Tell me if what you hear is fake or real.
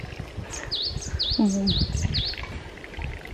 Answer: real